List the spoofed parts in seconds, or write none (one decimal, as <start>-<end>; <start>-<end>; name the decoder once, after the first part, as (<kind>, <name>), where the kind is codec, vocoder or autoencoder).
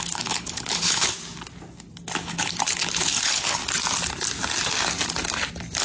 0.0-1.1 (codec, HILCodec); 2.2-3.6